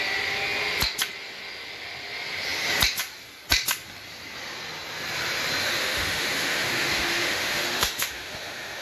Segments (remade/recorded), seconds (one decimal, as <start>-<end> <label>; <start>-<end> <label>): 0.0-5.6 recorded; 5.6-8.8 remade